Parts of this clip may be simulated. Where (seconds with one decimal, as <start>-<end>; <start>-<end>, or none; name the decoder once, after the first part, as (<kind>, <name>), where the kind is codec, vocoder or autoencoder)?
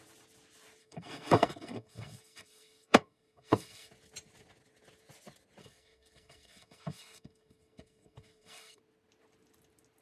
0.8-3.9 (codec, SNAC); 5.6-8.8